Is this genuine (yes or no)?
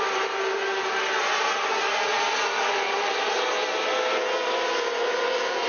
yes